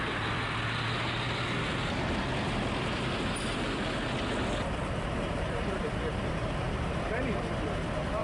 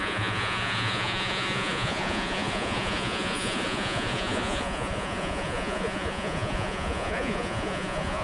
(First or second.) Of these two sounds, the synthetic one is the second